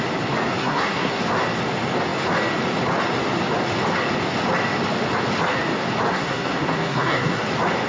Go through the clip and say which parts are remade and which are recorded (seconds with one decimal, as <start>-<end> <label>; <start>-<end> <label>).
0.0-0.6 recorded; 0.6-1.2 remade; 1.2-6.1 recorded; 6.1-7.5 remade; 7.5-7.9 recorded